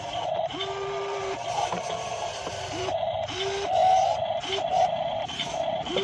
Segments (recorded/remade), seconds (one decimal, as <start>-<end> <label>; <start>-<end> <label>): 0.0-3.8 remade; 3.8-4.5 recorded; 4.5-6.0 remade